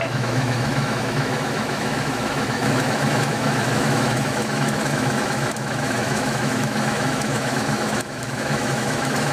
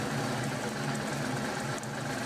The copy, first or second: first